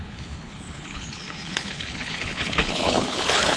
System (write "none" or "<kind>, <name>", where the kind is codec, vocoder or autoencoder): codec, HILCodec